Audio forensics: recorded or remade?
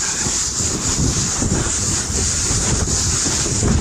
remade